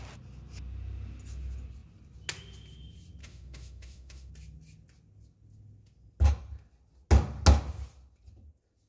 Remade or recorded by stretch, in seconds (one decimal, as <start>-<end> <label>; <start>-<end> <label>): 0.0-3.2 recorded; 3.2-4.3 remade; 4.3-8.9 recorded